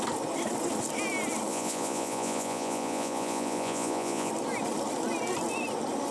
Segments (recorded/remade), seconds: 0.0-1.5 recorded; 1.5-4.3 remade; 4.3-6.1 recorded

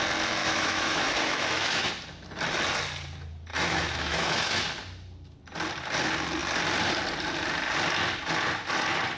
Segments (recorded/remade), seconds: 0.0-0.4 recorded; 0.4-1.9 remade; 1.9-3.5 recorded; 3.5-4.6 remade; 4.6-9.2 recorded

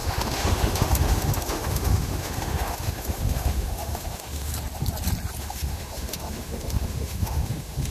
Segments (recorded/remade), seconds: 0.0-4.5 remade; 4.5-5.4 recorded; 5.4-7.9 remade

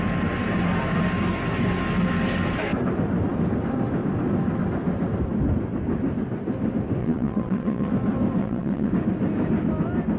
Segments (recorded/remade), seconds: 0.0-7.0 recorded; 7.0-7.9 remade; 7.9-8.4 recorded; 8.4-8.9 remade; 8.9-10.2 recorded

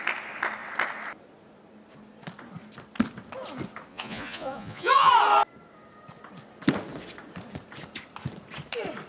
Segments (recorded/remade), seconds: 0.0-3.9 recorded; 3.9-5.1 remade; 5.1-9.1 recorded

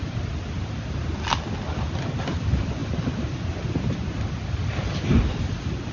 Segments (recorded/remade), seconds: 0.0-2.8 recorded; 2.8-3.9 remade; 3.9-4.6 recorded; 4.6-5.2 remade; 5.2-5.9 recorded

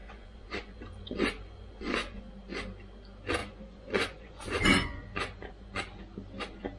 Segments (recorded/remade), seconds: 0.0-2.2 remade; 2.2-3.4 recorded; 3.4-6.0 remade; 6.0-6.8 recorded